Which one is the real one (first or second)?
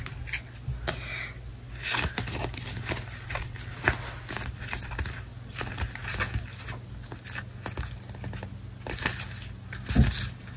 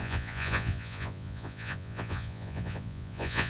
first